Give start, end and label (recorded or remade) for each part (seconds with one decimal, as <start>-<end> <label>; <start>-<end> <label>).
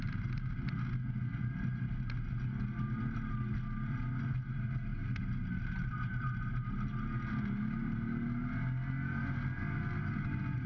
0.0-10.7 recorded